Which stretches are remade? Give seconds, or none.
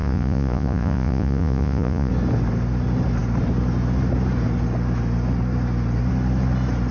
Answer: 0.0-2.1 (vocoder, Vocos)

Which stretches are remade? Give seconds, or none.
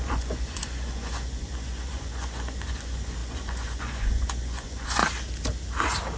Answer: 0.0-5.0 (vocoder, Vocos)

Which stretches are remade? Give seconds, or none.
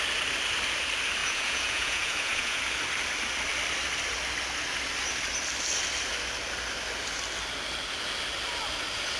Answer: 1.2-2.6 (vocoder, Vocos)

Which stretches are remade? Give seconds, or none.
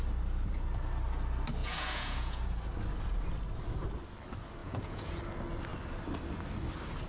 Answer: 1.6-2.6 (vocoder, Vocos); 4.6-5.2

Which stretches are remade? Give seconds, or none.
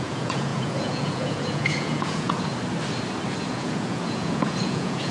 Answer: 0.0-2.5 (vocoder, Vocos); 3.4-5.1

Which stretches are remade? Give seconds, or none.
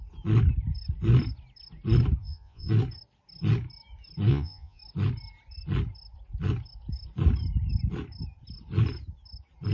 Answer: 2.2-2.7 (vocoder, Vocos); 4.3-4.8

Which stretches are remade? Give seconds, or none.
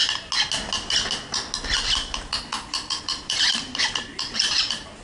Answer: none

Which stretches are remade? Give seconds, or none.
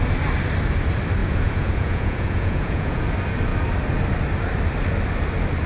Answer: 1.2-3.0 (vocoder, Vocos)